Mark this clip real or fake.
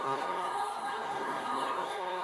fake